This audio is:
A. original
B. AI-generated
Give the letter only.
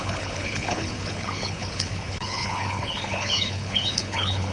B